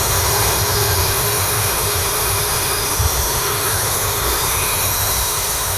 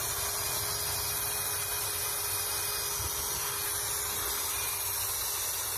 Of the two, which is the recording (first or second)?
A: second